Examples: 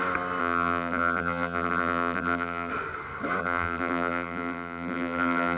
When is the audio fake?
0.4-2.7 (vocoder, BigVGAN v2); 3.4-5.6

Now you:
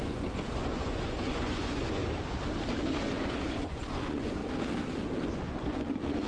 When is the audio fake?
0.0-2.0 (vocoder, Vocos); 3.0-4.4; 5.3-6.3

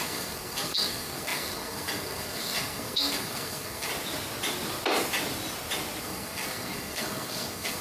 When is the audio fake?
0.0-3.9 (codec, SNAC); 6.0-7.8

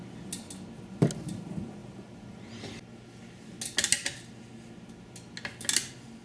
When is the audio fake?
1.8-2.5 (vocoder, BigVGAN v2)

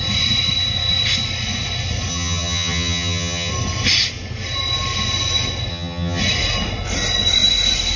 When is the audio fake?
2.1-3.5 (vocoder, HiFi-GAN); 5.7-6.2

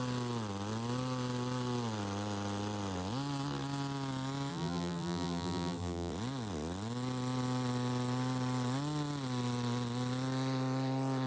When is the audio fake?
4.5-6.1 (vocoder, BigVGAN v2)

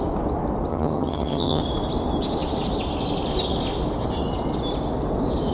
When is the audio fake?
0.7-1.6 (vocoder, HiFi-GAN)